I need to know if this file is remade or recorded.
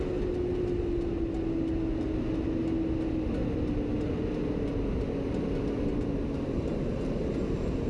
recorded